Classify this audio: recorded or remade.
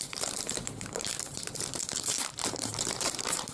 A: remade